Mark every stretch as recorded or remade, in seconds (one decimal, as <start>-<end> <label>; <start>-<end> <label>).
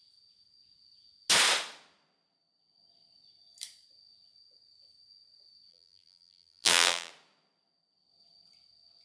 0.0-5.7 recorded; 5.7-7.1 remade; 7.1-9.0 recorded